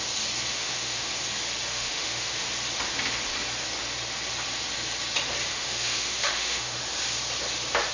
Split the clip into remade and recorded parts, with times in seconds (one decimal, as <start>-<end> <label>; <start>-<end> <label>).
0.0-0.5 recorded; 0.5-1.1 remade; 1.1-1.7 recorded; 1.7-2.5 remade; 2.5-5.5 recorded; 5.5-6.8 remade; 6.8-7.9 recorded